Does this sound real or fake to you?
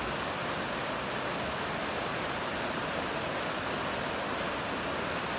real